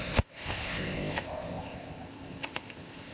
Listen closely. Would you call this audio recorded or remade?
remade